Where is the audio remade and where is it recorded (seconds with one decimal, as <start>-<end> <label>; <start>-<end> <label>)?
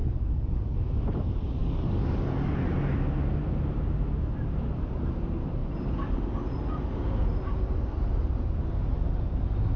0.0-0.6 remade; 0.6-1.6 recorded; 1.6-2.6 remade; 2.6-9.8 recorded